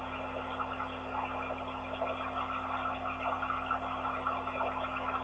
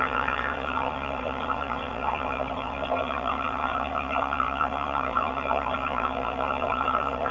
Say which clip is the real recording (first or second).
first